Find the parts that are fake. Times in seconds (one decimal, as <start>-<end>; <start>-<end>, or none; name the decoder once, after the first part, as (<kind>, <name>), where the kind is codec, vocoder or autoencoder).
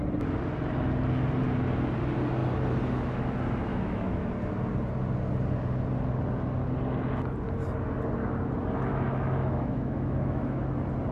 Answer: 3.7-4.3 (autoencoder, DAC-VAE); 8.9-10.6